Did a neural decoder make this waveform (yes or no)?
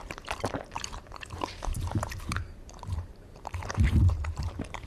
yes